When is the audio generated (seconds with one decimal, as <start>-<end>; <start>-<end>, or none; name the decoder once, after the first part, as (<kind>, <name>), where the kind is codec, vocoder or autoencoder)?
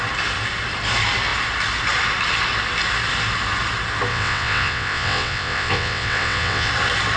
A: 4.1-6.7 (vocoder, WaveNeXt)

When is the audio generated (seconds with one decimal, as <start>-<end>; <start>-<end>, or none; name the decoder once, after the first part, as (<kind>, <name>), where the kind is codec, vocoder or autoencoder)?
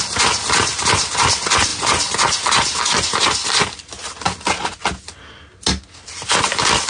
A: none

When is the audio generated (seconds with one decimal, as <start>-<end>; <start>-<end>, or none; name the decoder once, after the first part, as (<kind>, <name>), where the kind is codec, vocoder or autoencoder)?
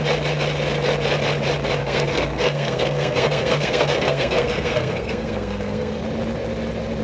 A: 1.8-6.0 (codec, SNAC)